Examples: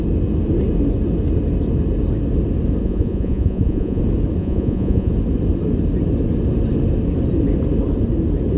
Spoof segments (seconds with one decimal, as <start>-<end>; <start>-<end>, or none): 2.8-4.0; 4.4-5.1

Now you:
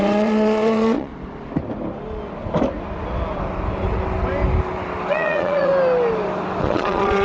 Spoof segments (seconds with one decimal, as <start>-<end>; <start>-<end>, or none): 0.0-1.1; 5.1-5.7; 6.6-7.2

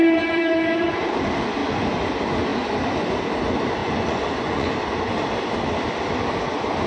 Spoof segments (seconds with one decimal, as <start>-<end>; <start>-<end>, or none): 0.0-1.0; 3.8-4.7

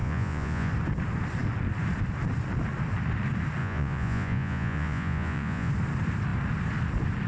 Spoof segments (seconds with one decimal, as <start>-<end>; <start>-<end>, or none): 0.0-0.7; 3.6-5.7

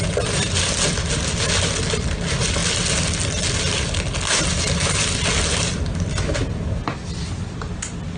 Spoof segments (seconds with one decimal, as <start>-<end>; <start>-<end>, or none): none

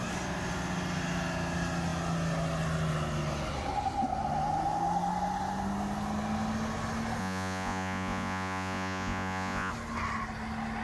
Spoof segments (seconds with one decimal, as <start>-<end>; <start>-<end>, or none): 7.2-9.7

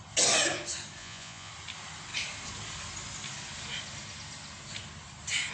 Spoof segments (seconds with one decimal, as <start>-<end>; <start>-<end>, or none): 1.0-1.5